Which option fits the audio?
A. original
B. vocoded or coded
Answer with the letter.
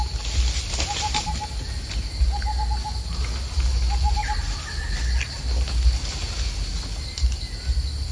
A